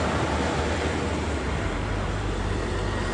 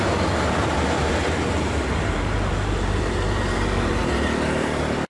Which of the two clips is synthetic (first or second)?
second